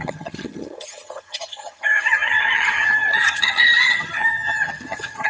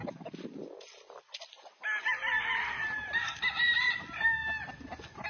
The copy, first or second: first